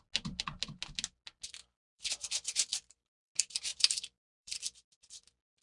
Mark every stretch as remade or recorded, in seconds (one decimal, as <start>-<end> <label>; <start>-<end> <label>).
0.0-1.6 recorded; 1.6-2.1 remade; 2.1-2.7 recorded; 2.7-3.3 remade; 3.3-3.7 recorded; 3.7-5.1 remade; 5.1-5.6 recorded